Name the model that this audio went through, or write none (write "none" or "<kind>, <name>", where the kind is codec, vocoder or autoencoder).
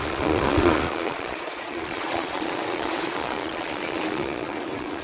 vocoder, Vocos